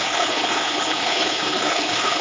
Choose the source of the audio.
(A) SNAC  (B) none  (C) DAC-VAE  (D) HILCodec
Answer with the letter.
D